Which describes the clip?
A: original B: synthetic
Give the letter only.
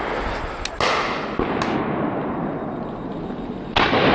A